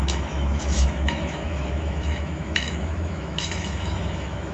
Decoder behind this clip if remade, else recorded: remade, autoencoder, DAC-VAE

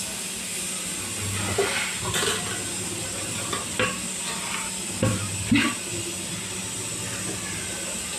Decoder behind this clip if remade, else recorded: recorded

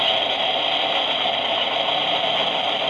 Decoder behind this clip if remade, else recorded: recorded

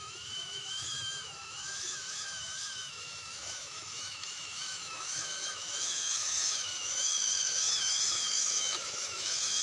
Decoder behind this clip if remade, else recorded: remade, autoencoder, DAC-VAE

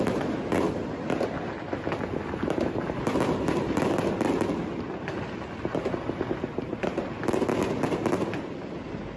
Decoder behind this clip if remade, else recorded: recorded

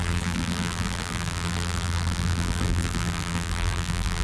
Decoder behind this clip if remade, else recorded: remade, vocoder, BigVGAN v2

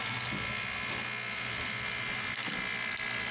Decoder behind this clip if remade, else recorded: recorded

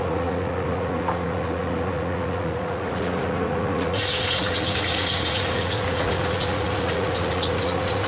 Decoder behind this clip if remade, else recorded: remade, vocoder, Vocos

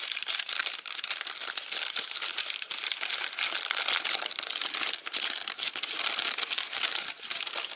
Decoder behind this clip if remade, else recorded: recorded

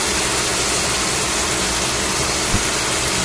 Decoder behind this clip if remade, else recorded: recorded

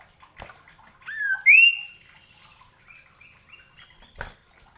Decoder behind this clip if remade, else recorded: recorded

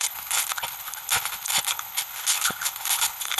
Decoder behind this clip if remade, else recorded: remade, codec, HILCodec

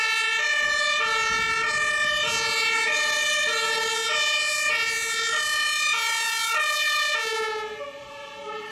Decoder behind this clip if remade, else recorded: recorded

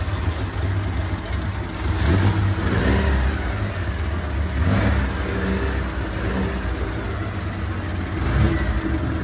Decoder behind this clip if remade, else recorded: recorded